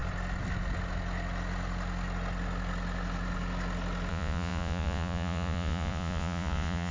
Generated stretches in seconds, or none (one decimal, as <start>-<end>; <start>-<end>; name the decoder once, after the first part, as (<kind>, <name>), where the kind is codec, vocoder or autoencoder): 4.1-6.9 (vocoder, Vocos)